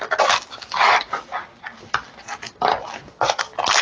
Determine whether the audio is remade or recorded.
recorded